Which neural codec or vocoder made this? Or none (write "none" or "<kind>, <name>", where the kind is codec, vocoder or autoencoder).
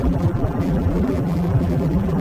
vocoder, BigVGAN v2